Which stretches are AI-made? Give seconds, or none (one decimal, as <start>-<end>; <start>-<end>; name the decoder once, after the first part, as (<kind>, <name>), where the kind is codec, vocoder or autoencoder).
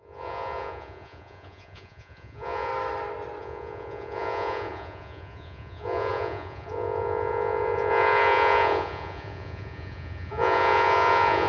0.0-2.7 (vocoder, Vocos); 3.4-11.5